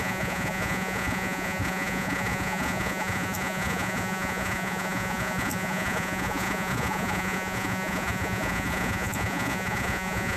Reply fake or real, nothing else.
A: fake